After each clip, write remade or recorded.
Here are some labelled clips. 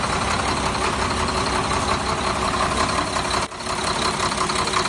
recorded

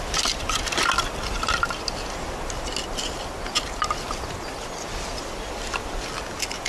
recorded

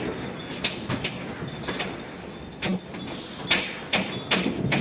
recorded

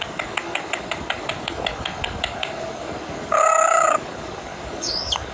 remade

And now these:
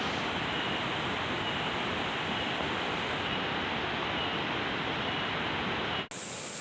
recorded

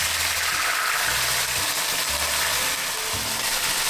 recorded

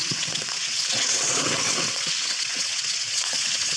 remade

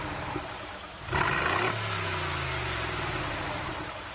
recorded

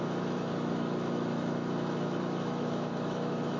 remade